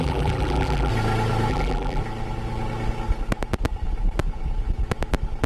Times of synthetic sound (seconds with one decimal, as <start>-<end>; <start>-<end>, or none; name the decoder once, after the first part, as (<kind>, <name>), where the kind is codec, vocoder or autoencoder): 0.0-0.9 (vocoder, BigVGAN v2); 1.5-2.0